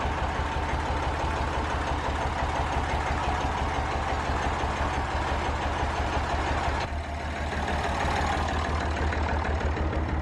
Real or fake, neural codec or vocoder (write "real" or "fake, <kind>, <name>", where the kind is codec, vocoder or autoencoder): real